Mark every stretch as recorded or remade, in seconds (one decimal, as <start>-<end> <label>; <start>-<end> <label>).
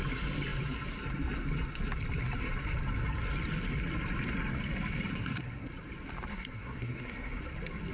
0.0-5.1 recorded; 5.1-5.7 remade; 5.7-6.3 recorded; 6.3-7.4 remade; 7.4-7.9 recorded